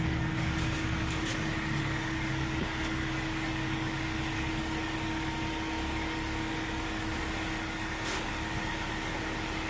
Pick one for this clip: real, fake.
fake